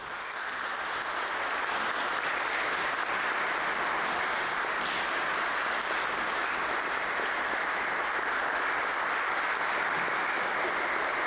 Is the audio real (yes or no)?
yes